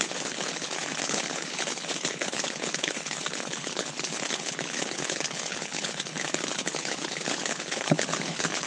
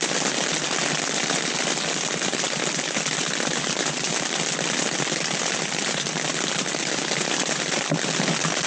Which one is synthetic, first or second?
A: first